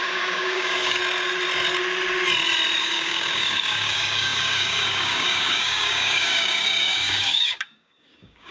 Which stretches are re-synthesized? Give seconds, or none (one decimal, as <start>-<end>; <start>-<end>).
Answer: 0.0-1.0; 2.8-8.5